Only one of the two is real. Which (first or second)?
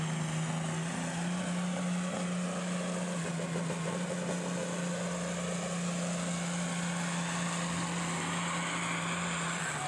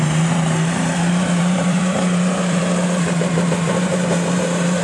first